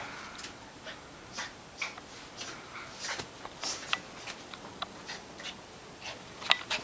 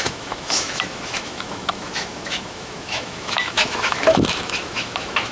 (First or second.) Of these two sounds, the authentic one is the first